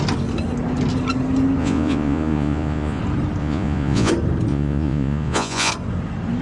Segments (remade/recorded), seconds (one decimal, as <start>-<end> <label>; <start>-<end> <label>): 0.0-1.6 recorded; 1.6-3.0 remade; 3.0-3.4 recorded; 3.4-4.1 remade; 4.1-4.5 recorded; 4.5-5.7 remade; 5.7-6.4 recorded

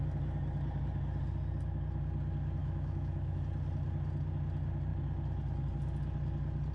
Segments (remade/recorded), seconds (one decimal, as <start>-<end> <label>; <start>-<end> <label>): 0.0-2.6 recorded; 2.6-3.4 remade; 3.4-6.7 recorded

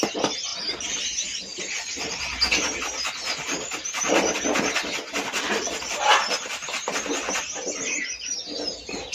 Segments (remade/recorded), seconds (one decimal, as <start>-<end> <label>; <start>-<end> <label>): 0.0-9.1 recorded

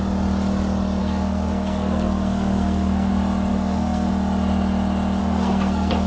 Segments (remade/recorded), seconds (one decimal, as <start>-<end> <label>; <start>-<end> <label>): 0.0-1.0 recorded; 1.0-3.1 remade; 3.1-3.5 recorded; 3.5-4.1 remade; 4.1-5.2 recorded; 5.2-6.1 remade